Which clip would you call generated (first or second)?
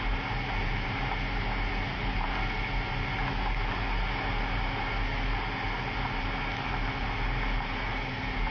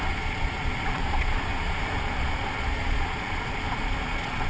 second